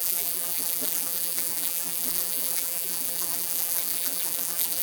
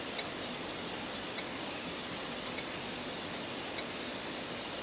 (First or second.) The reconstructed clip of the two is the first